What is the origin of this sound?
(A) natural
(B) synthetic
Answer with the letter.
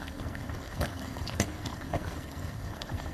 B